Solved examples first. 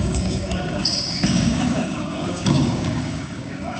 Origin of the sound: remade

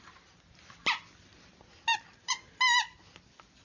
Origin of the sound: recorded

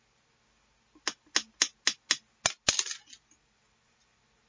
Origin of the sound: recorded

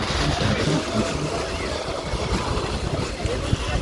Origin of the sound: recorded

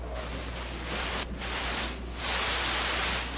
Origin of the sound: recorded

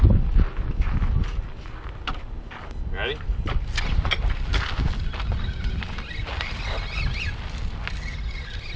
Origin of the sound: recorded